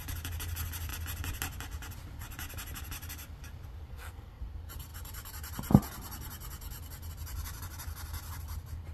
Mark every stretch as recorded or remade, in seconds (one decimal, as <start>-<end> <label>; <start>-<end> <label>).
0.0-3.9 recorded; 3.9-4.4 remade; 4.4-8.9 recorded